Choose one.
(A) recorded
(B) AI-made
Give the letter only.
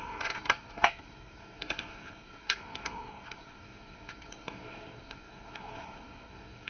B